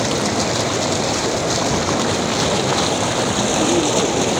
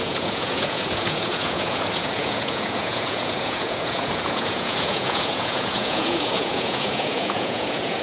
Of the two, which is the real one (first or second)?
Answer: first